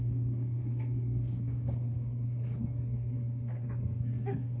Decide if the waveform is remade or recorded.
remade